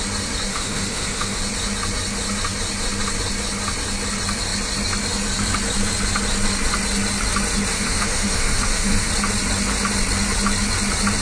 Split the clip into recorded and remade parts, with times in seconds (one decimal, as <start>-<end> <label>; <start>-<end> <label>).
0.0-0.5 recorded; 0.5-1.4 remade; 1.4-7.7 recorded; 7.7-9.1 remade; 9.1-11.2 recorded